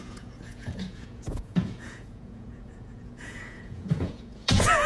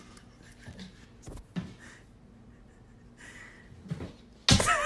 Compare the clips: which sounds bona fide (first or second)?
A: second